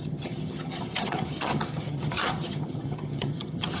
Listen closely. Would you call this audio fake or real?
fake